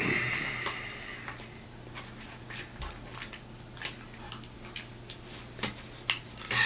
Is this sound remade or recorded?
recorded